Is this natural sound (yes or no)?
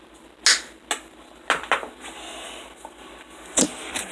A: yes